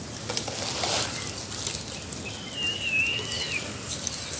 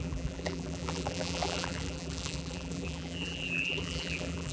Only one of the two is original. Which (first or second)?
first